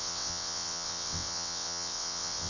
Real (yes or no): no